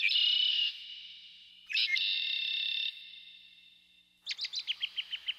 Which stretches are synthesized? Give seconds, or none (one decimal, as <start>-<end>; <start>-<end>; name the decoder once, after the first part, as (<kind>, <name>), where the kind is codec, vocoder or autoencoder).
0.5-1.5 (autoencoder, DAC-VAE)